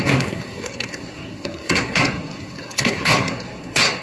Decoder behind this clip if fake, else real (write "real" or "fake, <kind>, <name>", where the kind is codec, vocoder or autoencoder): fake, codec, SNAC